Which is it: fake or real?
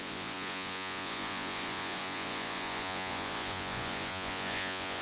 fake